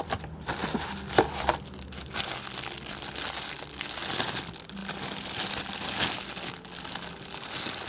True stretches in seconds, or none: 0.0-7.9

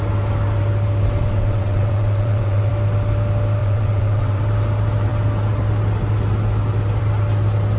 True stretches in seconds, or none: 0.0-1.2; 2.7-3.6; 4.4-7.8

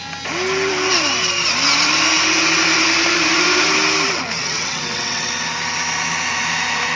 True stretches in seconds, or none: 0.0-4.4; 5.3-7.0

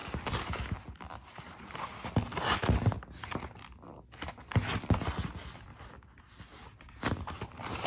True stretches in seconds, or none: 0.0-7.9

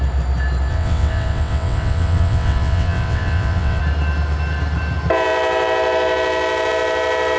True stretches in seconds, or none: 0.0-0.7; 3.8-7.4